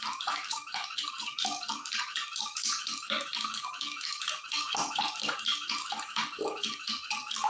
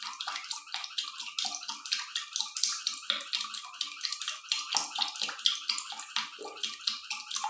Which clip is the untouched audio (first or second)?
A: second